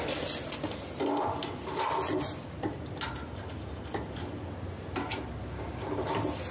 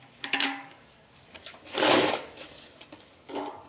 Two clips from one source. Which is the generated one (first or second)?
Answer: second